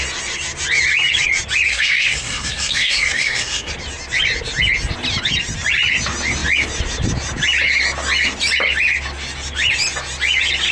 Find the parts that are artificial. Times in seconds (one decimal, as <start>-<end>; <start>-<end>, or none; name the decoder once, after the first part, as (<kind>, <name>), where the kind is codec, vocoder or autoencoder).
1.7-3.7 (codec, SNAC)